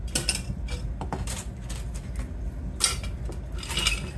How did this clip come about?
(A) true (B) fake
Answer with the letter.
A